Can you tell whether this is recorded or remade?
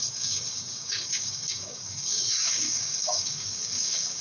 remade